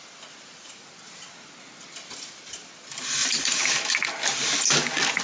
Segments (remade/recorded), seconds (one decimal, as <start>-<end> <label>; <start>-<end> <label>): 0.0-3.2 recorded; 3.2-3.9 remade; 3.9-5.2 recorded